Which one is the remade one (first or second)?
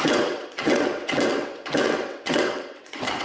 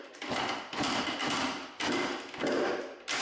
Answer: first